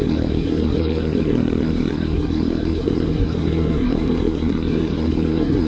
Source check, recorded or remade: remade